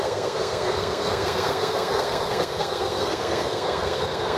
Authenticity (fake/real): fake